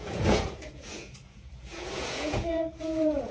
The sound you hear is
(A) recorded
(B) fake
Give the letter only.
B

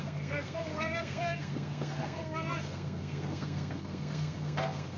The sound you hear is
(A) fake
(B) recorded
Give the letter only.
A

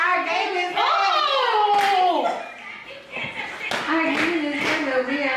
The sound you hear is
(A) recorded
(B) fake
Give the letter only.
A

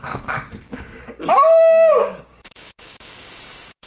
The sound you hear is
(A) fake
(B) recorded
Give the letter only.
A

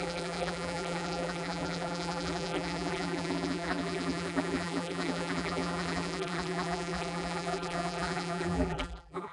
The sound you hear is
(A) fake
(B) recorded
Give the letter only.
A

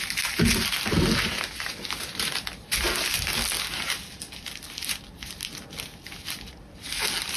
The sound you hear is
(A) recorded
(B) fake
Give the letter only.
A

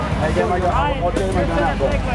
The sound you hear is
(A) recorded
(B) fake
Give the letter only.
A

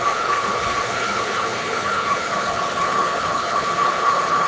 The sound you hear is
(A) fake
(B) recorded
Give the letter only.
A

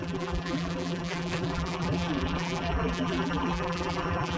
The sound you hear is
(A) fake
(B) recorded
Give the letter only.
A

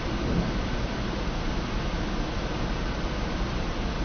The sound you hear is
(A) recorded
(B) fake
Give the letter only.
A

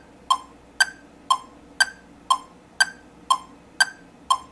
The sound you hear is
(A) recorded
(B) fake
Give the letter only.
A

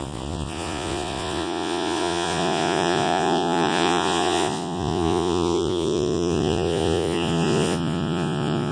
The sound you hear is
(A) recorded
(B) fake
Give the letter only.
B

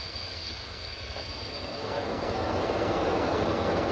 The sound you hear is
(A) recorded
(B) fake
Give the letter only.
B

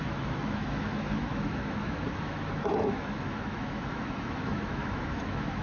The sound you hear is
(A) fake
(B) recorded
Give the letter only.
A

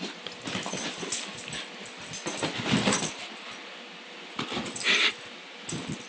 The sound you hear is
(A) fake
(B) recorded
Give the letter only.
B